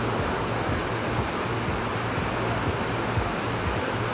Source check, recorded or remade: recorded